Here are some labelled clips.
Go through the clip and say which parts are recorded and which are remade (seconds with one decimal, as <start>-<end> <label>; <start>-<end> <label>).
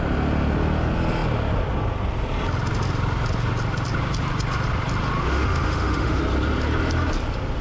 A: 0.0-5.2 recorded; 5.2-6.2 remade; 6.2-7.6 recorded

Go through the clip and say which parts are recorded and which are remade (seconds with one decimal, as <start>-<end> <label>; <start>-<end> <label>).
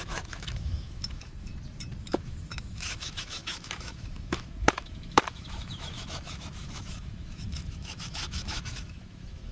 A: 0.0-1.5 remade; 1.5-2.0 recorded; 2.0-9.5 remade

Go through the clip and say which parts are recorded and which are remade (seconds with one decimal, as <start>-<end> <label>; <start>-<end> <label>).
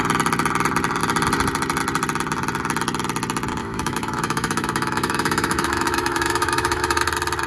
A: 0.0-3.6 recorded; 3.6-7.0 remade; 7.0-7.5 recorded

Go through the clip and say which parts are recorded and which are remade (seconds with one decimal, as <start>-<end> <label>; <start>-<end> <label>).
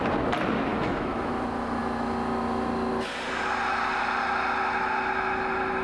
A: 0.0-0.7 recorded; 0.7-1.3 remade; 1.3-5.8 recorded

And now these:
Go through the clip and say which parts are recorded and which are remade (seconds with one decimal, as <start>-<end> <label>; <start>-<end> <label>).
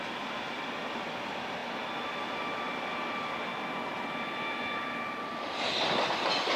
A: 0.0-6.6 recorded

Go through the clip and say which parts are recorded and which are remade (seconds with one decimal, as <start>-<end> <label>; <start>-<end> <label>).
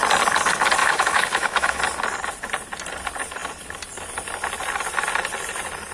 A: 0.0-0.8 recorded; 0.8-1.8 remade; 1.8-5.9 recorded